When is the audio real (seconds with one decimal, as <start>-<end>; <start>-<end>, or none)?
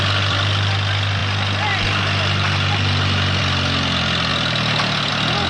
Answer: 0.0-5.5